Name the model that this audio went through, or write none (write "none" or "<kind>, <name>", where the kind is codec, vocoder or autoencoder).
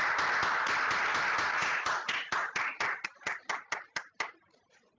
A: none